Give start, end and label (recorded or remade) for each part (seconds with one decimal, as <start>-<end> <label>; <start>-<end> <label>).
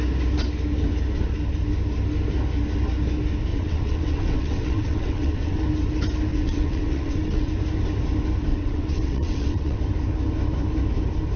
0.0-3.5 recorded; 3.5-5.6 remade; 5.6-6.3 recorded; 6.3-7.5 remade; 7.5-8.5 recorded; 8.5-9.8 remade; 9.8-11.4 recorded